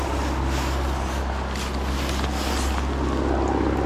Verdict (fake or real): real